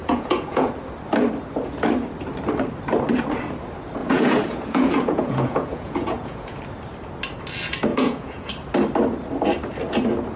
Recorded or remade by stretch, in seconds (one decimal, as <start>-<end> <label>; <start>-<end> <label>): 0.0-0.7 remade; 0.7-4.0 recorded; 4.0-6.6 remade; 6.6-7.9 recorded; 7.9-8.5 remade; 8.5-10.4 recorded